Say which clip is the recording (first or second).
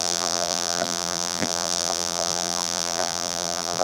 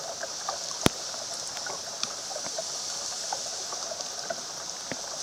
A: second